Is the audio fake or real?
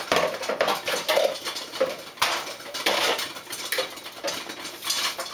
real